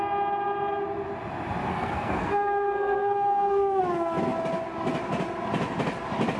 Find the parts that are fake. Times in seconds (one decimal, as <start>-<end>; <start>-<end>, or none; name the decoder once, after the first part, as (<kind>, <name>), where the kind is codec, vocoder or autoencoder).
1.7-3.8 (codec, SNAC)